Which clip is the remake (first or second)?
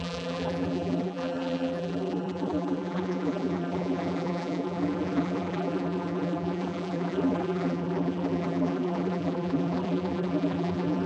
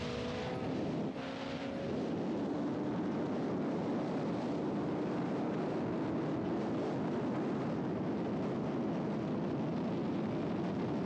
first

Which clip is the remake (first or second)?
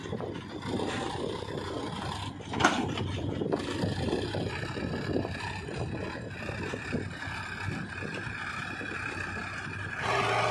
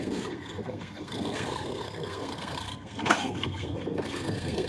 second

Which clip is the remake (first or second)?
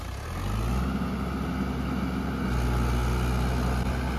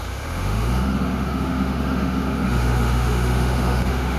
second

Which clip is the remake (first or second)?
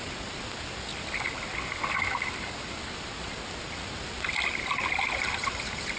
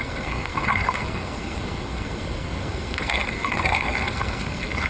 second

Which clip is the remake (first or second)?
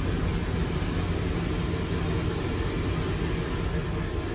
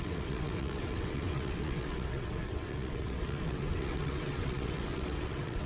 second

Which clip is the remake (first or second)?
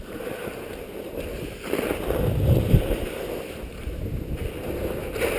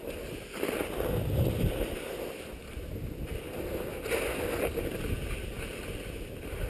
first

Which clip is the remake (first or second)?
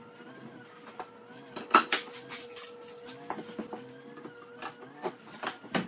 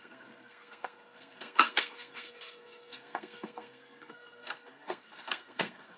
second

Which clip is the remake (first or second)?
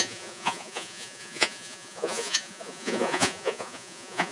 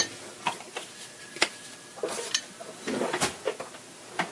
first